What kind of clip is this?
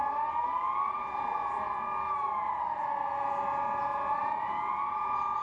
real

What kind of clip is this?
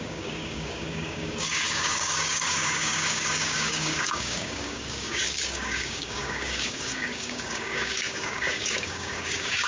fake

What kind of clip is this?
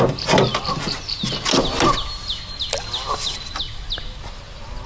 real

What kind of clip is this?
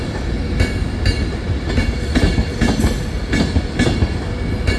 real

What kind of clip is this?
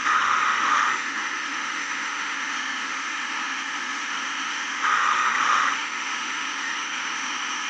fake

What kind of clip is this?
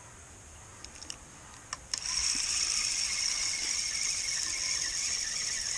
real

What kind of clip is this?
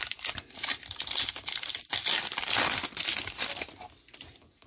real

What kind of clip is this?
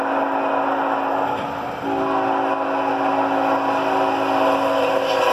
real